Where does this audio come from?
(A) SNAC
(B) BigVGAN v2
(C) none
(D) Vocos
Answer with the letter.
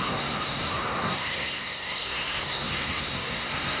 A